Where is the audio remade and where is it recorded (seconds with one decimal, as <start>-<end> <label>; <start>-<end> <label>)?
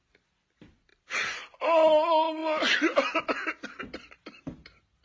0.0-5.0 recorded